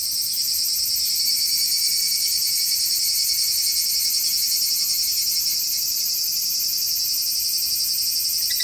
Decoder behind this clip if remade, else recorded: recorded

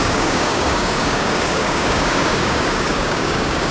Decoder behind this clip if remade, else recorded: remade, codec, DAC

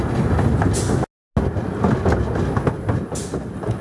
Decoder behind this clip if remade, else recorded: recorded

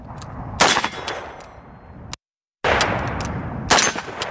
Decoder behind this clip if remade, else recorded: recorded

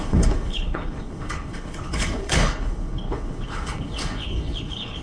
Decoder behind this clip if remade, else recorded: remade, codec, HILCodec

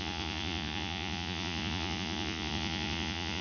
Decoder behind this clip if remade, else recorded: remade, vocoder, Vocos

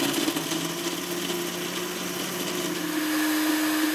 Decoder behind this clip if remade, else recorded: recorded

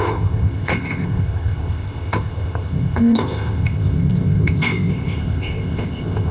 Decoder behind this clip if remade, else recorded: remade, codec, ZipCodec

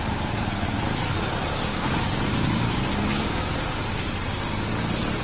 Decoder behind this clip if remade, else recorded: recorded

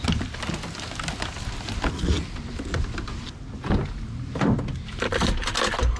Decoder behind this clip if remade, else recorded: recorded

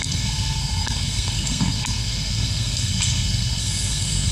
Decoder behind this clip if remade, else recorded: remade, codec, SNAC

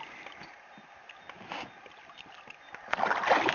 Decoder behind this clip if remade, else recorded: recorded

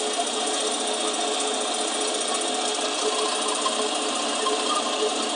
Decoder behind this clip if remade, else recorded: recorded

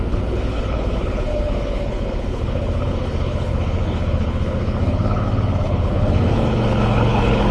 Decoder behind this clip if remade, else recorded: remade, codec, HILCodec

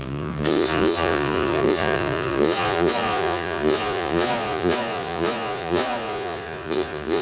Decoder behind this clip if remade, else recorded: remade, vocoder, Vocos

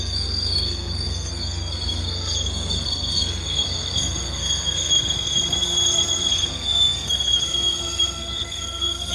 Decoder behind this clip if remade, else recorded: remade, codec, SNAC